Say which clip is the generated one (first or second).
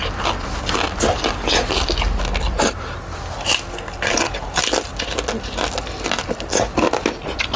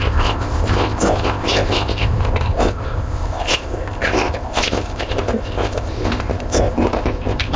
second